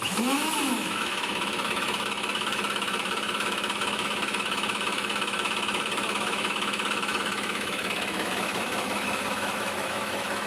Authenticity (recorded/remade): remade